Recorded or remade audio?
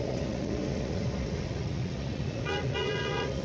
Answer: remade